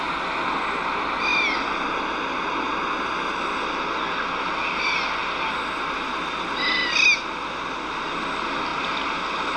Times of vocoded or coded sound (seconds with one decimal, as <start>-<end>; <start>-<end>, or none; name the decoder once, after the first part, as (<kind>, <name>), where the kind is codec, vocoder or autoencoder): none